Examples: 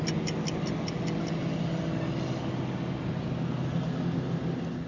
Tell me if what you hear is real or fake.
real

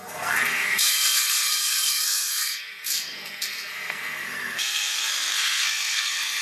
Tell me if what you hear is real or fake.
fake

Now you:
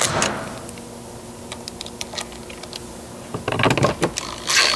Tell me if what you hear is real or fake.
real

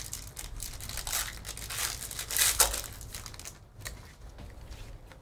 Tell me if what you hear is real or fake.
real